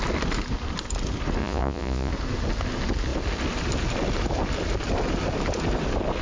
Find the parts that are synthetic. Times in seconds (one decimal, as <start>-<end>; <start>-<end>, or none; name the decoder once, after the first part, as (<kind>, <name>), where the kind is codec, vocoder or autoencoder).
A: 1.4-2.1 (vocoder, Vocos)